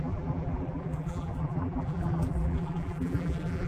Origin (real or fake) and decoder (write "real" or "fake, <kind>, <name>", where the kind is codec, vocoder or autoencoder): fake, vocoder, BigVGAN v2